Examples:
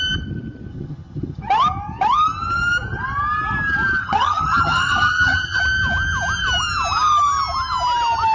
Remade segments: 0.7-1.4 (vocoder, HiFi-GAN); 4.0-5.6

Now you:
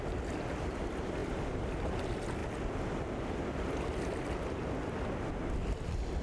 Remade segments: none

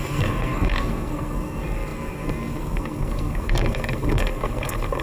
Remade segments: 0.0-5.0 (codec, SNAC)

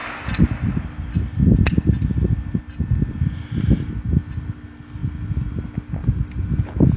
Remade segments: none